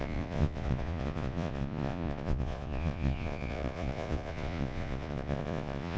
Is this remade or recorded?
remade